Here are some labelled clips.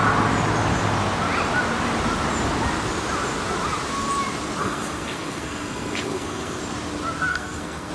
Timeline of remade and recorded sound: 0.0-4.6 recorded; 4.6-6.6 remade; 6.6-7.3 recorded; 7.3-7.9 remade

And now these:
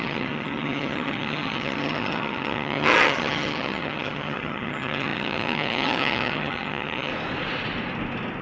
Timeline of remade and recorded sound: 0.0-7.1 remade; 7.1-8.4 recorded

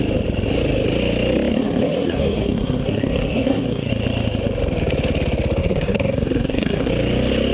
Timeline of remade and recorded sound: 0.0-1.5 recorded; 1.5-3.9 remade; 3.9-5.6 recorded; 5.6-6.9 remade; 6.9-7.5 recorded

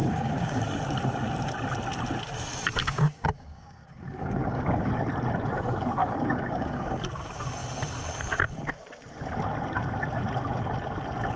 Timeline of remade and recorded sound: 0.0-0.6 remade; 0.6-2.8 recorded; 2.8-4.9 remade; 4.9-6.0 recorded; 6.0-7.0 remade; 7.0-11.4 recorded

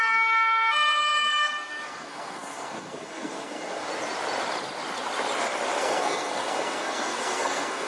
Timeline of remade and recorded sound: 0.0-3.9 remade; 3.9-5.8 recorded; 5.8-7.9 remade

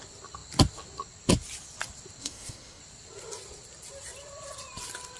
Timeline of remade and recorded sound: 0.0-2.2 recorded; 2.2-2.8 remade; 2.8-5.2 recorded

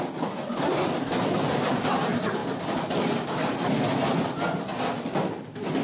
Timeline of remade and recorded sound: 0.0-5.8 recorded